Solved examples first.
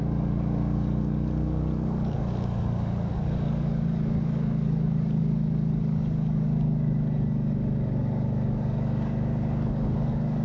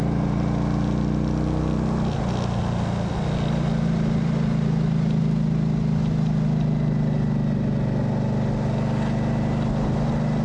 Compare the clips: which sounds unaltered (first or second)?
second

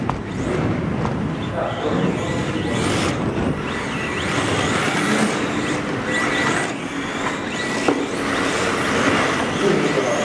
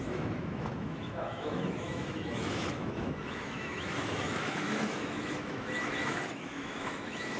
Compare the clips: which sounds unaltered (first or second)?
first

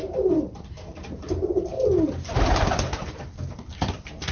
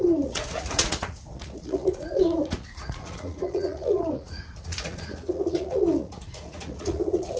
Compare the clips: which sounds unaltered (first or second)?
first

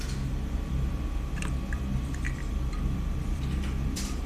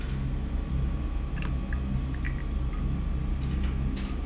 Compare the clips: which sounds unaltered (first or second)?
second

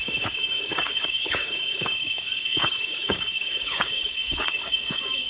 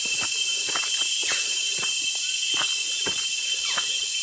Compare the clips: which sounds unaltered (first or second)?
second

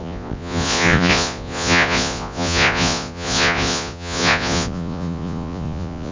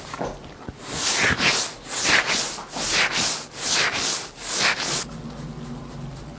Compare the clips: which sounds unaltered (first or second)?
second